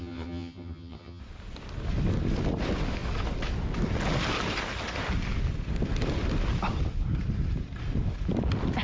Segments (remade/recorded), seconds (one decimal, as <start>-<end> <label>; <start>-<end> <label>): 0.0-1.2 remade; 1.2-8.8 recorded

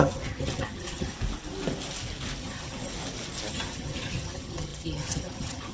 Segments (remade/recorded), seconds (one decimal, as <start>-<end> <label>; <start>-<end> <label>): 0.0-1.1 remade; 1.1-2.4 recorded; 2.4-2.9 remade; 2.9-3.5 recorded; 3.5-5.7 remade

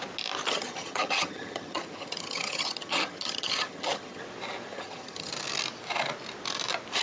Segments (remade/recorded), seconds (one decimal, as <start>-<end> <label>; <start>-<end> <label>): 0.0-0.4 recorded; 0.4-4.2 remade; 4.2-4.7 recorded; 4.7-5.3 remade; 5.3-7.0 recorded

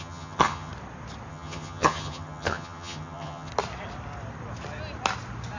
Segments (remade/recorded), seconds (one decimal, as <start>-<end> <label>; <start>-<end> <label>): 0.0-0.7 remade; 0.7-1.3 recorded; 1.3-3.5 remade; 3.5-5.6 recorded

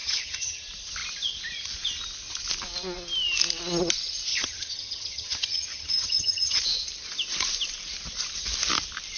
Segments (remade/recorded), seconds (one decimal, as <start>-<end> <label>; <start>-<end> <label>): 0.0-0.6 remade; 0.6-4.3 recorded; 4.3-6.6 remade; 6.6-9.2 recorded

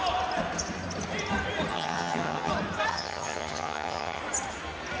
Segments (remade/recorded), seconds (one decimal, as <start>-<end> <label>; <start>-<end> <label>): 0.0-1.7 recorded; 1.7-2.5 remade; 2.5-2.9 recorded; 2.9-4.2 remade; 4.2-5.0 recorded

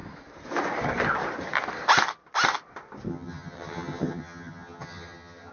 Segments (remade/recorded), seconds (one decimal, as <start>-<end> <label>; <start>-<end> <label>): 0.0-3.1 recorded; 3.1-5.5 remade

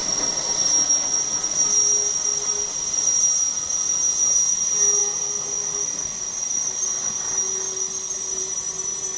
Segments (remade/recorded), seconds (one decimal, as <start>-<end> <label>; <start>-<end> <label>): 0.0-9.2 recorded